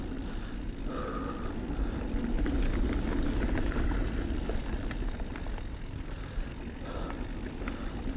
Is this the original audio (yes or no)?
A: yes